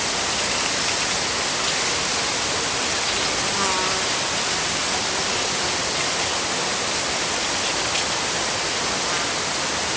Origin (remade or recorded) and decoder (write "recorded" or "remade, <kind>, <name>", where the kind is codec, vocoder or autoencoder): recorded